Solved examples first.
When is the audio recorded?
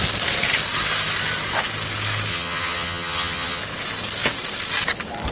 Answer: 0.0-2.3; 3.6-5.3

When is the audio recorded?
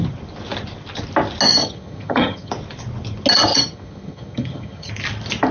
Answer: 0.0-1.6; 2.5-3.5; 4.9-5.5